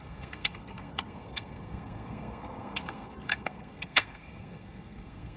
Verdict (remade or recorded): remade